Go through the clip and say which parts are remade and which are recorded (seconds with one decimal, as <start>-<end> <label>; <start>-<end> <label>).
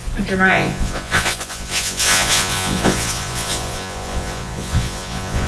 0.0-0.5 recorded; 0.5-5.5 remade